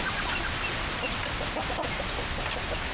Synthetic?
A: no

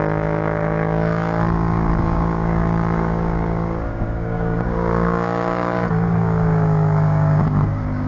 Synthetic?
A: yes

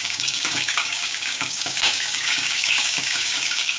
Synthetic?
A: yes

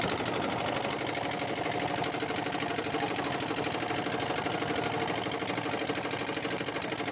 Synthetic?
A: no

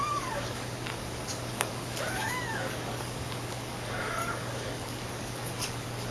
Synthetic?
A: yes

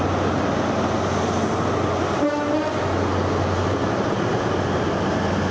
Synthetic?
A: no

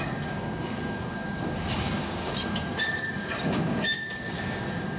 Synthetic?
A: yes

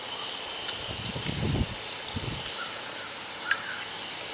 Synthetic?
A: no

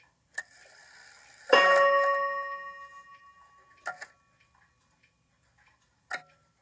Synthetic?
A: no